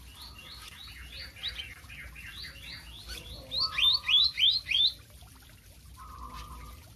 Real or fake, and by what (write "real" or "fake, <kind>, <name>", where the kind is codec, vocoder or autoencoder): real